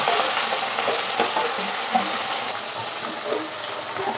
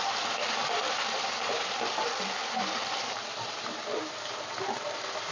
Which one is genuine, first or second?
first